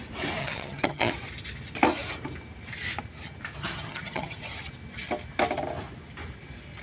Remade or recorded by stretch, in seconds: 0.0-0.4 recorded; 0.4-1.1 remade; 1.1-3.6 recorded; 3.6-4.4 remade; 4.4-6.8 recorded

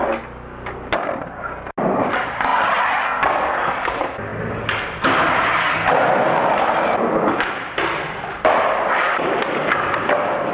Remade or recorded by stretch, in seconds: 0.0-10.5 recorded

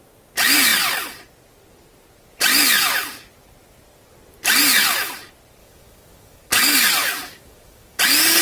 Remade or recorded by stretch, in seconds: 0.0-5.6 recorded; 5.6-8.0 remade; 8.0-8.4 recorded

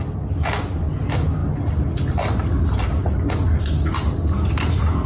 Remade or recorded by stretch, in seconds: 0.0-5.1 recorded

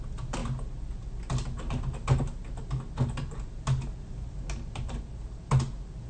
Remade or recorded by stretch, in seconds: 0.0-6.1 recorded

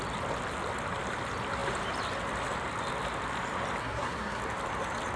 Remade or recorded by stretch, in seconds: 0.0-3.8 recorded; 3.8-4.4 remade; 4.4-5.2 recorded